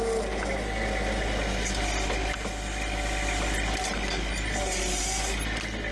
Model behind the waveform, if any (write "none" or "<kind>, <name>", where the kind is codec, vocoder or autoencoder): none